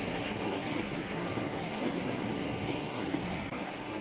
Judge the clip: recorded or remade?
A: remade